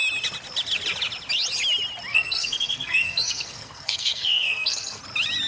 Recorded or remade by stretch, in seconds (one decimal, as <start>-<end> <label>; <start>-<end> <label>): 0.0-2.1 recorded; 2.1-5.0 remade; 5.0-5.5 recorded